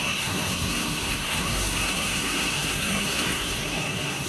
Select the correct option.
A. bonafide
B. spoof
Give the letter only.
B